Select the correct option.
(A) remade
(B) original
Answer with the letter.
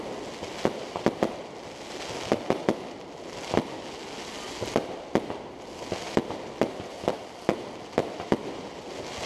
B